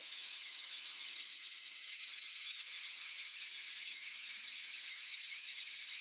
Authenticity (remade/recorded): remade